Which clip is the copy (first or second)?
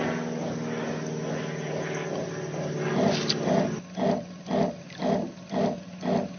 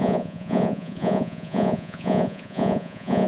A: second